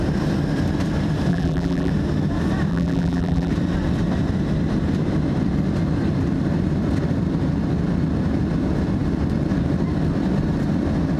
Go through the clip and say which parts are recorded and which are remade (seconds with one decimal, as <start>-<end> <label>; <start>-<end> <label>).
0.0-1.3 recorded; 1.3-1.9 remade; 1.9-2.7 recorded; 2.7-3.5 remade; 3.5-11.2 recorded